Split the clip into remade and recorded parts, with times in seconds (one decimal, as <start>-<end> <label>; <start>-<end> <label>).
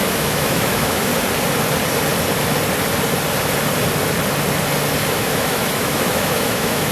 0.0-1.1 remade; 1.1-5.1 recorded; 5.1-6.9 remade